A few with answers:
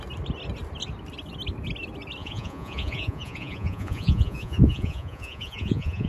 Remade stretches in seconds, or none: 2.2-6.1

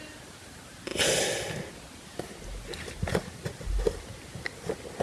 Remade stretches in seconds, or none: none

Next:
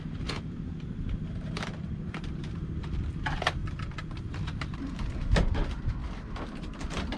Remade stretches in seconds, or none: 0.0-3.6; 4.2-6.0

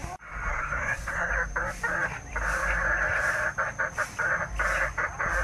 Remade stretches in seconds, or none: 0.5-1.3